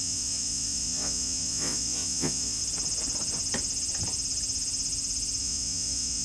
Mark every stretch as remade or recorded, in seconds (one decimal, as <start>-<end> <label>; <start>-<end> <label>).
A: 0.0-2.6 remade; 2.6-5.4 recorded; 5.4-6.2 remade